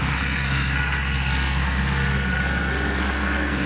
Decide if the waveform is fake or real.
fake